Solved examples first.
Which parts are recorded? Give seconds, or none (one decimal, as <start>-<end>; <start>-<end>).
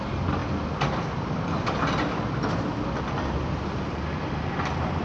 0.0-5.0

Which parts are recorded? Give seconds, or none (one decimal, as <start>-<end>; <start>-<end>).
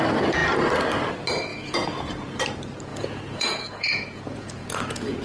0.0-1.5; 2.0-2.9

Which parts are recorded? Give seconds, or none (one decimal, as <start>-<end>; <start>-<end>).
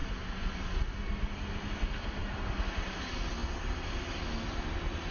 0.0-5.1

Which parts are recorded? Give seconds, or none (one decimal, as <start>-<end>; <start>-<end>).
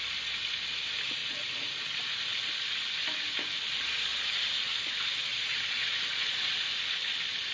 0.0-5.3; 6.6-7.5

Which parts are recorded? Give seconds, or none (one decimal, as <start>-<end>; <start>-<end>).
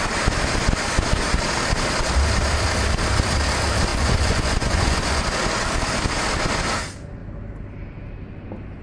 0.0-3.9; 5.2-8.8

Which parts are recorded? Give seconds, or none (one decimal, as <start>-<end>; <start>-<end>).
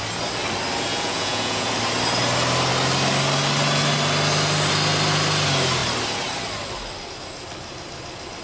0.0-0.9; 1.7-8.4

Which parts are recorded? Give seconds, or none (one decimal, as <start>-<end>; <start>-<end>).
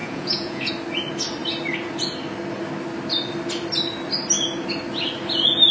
0.7-5.7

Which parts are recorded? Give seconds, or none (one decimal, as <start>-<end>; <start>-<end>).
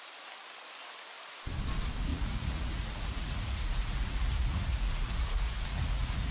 0.0-2.1